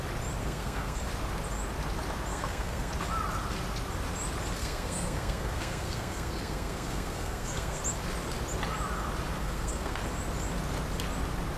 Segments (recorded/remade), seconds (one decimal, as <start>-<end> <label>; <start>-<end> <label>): 0.0-0.4 recorded; 0.4-1.0 remade; 1.0-2.3 recorded; 2.3-2.9 remade; 2.9-4.6 recorded; 4.6-7.8 remade; 7.8-9.4 recorded; 9.4-10.0 remade; 10.0-11.6 recorded

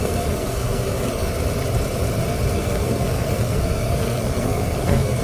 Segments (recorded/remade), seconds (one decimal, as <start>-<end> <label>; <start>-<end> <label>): 0.0-1.3 remade; 1.3-2.5 recorded; 2.5-5.2 remade